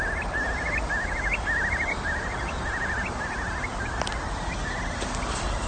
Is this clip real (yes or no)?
yes